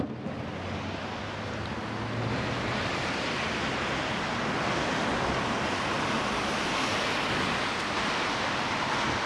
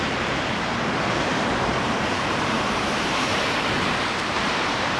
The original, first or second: first